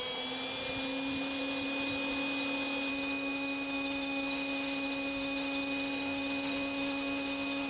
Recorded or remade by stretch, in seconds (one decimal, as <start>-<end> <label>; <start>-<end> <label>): 0.0-2.9 recorded; 2.9-7.7 remade